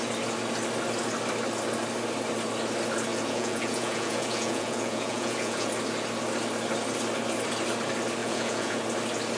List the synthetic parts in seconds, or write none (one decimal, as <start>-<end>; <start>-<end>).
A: 3.1-5.7; 8.2-8.8